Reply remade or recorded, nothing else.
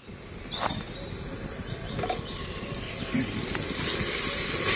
recorded